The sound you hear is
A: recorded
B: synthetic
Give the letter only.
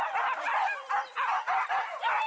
A